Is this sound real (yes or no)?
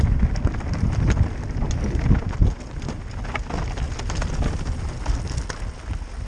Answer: yes